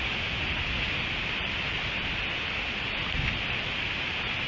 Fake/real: real